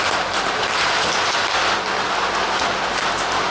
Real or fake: real